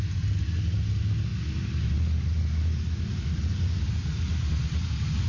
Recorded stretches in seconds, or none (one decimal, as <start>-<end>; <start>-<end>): 0.0-5.3